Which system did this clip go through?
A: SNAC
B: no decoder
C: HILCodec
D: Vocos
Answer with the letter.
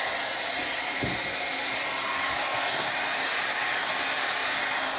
B